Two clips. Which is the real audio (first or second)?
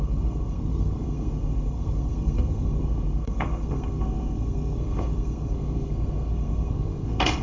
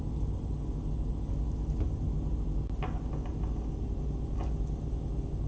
second